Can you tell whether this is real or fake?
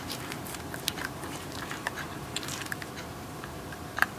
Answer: fake